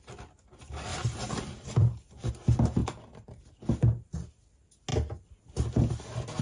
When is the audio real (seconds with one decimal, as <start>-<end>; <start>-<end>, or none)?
0.0-0.9; 2.3-2.8; 3.5-6.4